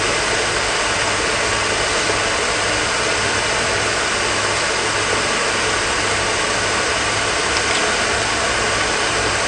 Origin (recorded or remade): recorded